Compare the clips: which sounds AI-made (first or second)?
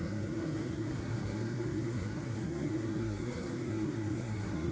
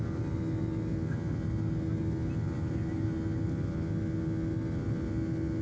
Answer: first